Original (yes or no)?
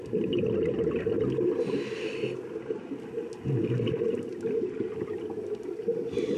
yes